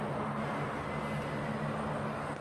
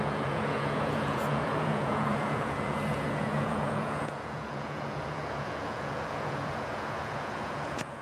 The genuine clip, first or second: first